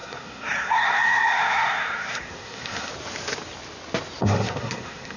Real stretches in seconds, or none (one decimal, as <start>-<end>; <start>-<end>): 2.9-4.2